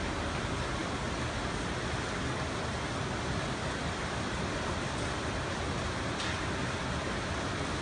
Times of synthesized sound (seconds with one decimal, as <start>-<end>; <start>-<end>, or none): none